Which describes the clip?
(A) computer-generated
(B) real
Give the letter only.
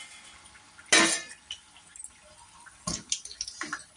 B